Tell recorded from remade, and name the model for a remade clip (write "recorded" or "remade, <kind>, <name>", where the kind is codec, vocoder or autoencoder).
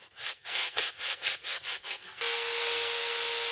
remade, codec, SNAC